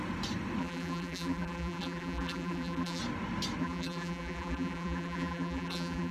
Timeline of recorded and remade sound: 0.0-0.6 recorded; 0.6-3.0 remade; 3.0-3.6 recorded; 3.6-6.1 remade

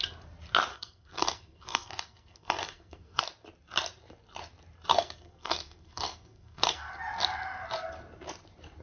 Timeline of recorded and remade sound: 0.0-0.7 recorded; 0.7-3.2 remade; 3.2-4.9 recorded; 4.9-6.9 remade; 6.9-8.8 recorded

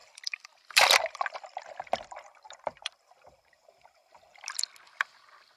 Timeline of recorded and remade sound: 0.0-3.4 remade; 3.4-5.6 recorded